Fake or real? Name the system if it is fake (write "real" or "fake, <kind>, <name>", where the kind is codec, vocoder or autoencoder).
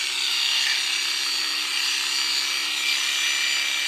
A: real